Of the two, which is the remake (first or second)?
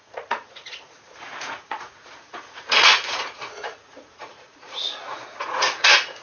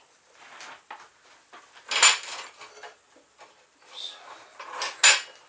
first